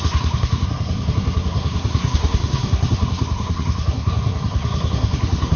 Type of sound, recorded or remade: remade